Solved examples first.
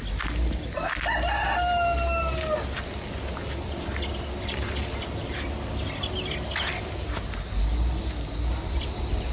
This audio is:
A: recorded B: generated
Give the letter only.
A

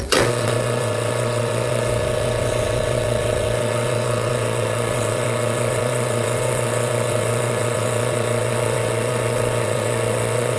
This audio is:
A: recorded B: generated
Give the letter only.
B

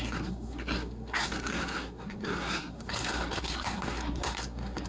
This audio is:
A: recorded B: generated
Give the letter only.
B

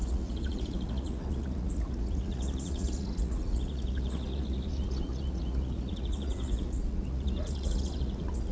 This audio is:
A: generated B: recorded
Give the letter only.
A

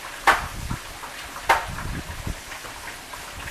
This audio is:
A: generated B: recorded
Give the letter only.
B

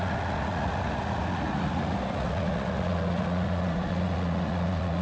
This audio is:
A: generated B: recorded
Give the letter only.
A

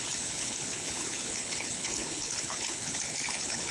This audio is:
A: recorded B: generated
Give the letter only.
B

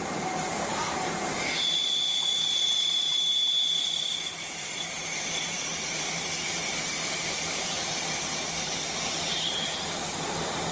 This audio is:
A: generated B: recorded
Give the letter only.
A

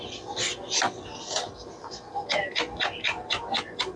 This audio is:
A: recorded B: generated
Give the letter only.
A